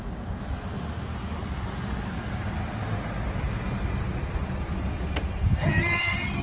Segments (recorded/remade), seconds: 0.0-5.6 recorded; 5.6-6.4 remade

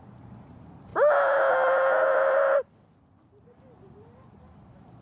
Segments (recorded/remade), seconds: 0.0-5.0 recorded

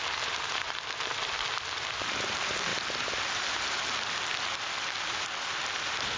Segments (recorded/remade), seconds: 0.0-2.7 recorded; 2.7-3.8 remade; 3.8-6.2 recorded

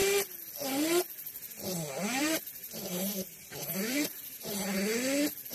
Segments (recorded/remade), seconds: 0.0-2.2 recorded; 2.2-4.9 remade; 4.9-5.5 recorded

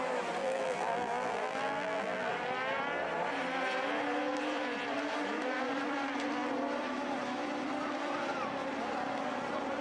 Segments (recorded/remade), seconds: 0.0-0.4 recorded; 0.4-2.3 remade; 2.3-9.8 recorded

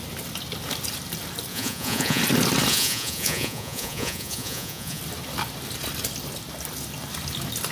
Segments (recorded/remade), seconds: 0.0-1.5 recorded; 1.5-2.2 remade; 2.2-2.7 recorded; 2.7-5.0 remade; 5.0-7.7 recorded

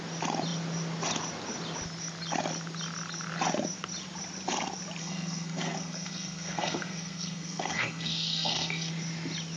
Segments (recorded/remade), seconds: 0.0-5.0 recorded; 5.0-8.9 remade; 8.9-9.6 recorded

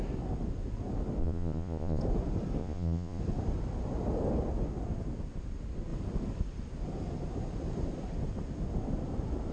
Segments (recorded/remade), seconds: 0.0-1.2 recorded; 1.2-2.0 remade; 2.0-2.6 recorded; 2.6-3.2 remade; 3.2-9.5 recorded